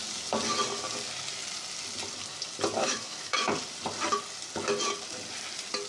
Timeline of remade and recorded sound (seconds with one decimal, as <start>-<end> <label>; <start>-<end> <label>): 0.0-2.8 recorded; 2.8-3.5 remade; 3.5-5.9 recorded